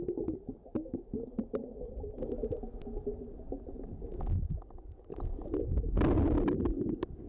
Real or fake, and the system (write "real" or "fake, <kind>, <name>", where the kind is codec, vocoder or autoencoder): real